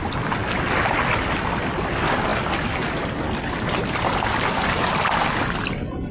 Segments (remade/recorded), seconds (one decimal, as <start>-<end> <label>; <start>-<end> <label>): 0.0-6.1 recorded